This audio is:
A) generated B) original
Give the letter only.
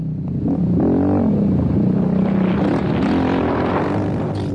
B